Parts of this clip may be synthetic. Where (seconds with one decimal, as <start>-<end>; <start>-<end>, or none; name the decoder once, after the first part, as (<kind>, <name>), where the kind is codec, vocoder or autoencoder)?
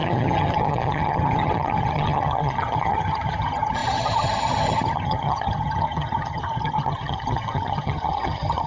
0.0-8.7 (vocoder, HiFi-GAN)